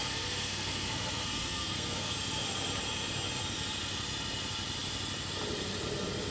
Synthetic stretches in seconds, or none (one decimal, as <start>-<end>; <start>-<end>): 0.0-2.1